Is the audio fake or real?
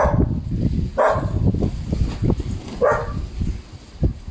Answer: real